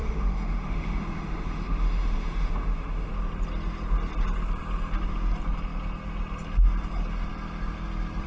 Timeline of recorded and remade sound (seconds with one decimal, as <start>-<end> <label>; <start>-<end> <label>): 0.0-3.1 remade; 3.1-8.3 recorded